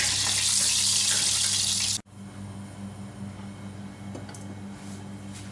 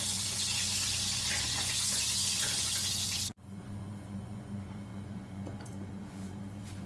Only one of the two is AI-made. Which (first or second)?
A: second